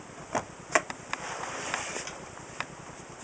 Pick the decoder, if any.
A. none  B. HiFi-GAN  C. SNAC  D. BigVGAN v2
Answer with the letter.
D